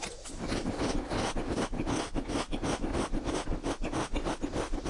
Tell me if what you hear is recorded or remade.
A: recorded